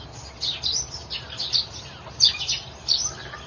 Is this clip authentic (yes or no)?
yes